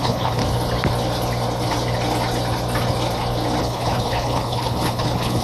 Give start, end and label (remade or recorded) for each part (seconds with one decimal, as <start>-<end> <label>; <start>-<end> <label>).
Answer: 0.0-0.4 remade; 0.4-3.6 recorded; 3.6-5.4 remade

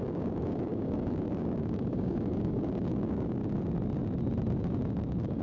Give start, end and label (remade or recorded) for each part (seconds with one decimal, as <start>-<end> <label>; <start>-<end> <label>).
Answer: 0.0-3.4 remade; 3.4-4.9 recorded; 4.9-5.4 remade

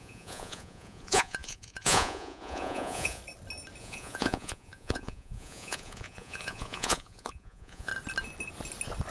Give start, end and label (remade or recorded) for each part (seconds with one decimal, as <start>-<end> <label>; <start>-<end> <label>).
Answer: 0.0-3.2 remade; 3.2-3.8 recorded; 3.8-7.9 remade; 7.9-9.1 recorded